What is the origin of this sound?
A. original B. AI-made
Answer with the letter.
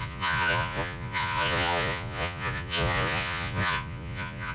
B